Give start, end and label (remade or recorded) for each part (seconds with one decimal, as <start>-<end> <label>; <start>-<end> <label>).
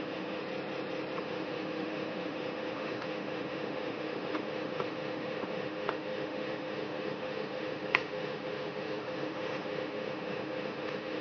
0.0-0.4 remade; 0.4-1.2 recorded; 1.2-11.2 remade